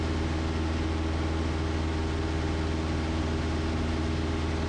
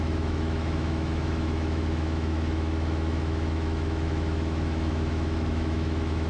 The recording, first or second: first